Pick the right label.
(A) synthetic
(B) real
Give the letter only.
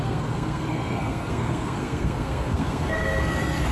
A